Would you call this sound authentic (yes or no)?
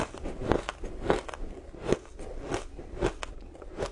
yes